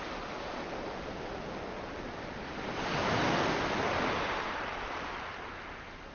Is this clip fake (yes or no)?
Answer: no